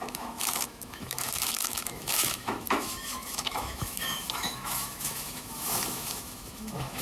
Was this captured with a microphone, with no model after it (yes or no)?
no